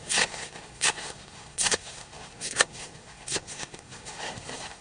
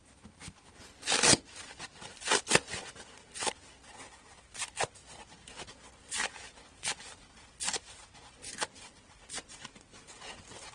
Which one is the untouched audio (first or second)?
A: second